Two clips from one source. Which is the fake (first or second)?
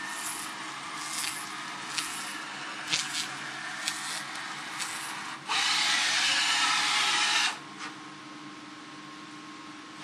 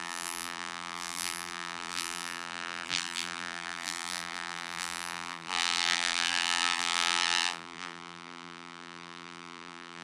second